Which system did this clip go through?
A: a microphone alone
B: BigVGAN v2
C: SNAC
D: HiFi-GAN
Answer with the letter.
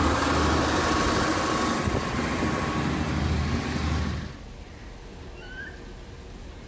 A